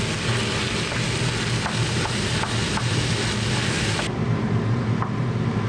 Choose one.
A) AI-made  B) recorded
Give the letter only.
B